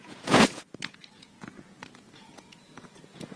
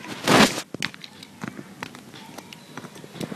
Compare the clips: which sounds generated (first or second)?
first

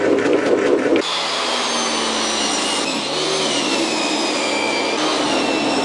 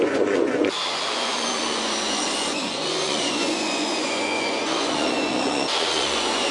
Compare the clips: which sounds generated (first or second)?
second